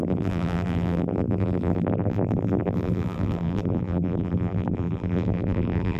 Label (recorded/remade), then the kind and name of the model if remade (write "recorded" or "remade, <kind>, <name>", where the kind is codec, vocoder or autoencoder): remade, vocoder, BigVGAN v2